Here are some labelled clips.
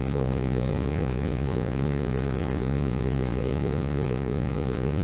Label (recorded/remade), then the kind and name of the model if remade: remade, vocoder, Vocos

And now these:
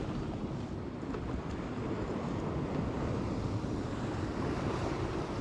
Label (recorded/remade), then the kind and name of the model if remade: recorded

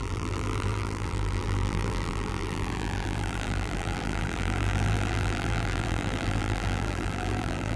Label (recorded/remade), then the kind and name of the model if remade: remade, vocoder, BigVGAN v2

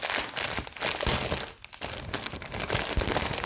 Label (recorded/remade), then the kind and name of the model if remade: recorded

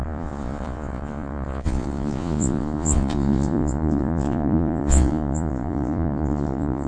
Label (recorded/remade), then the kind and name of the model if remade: remade, vocoder, Vocos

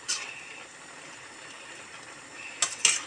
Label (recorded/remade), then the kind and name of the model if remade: recorded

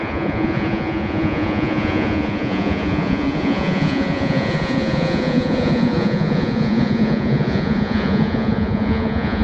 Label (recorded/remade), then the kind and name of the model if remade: remade, vocoder, Vocos